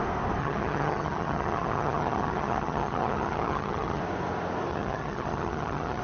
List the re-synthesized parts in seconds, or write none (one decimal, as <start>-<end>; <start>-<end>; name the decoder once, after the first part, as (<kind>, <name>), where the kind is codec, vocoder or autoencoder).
0.4-4.0 (vocoder, HiFi-GAN); 4.7-6.0